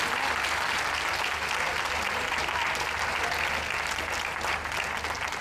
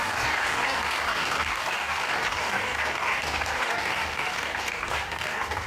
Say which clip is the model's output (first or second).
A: second